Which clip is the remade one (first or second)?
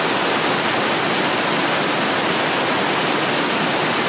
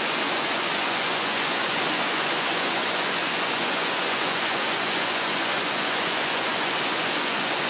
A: second